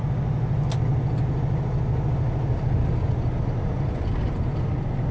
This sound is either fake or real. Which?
real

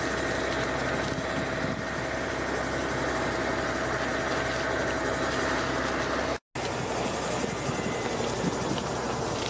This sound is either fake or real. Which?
real